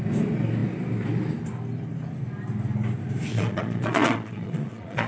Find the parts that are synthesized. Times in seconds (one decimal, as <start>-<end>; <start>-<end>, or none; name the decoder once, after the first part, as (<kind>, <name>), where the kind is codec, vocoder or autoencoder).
3.3-5.1 (vocoder, Vocos)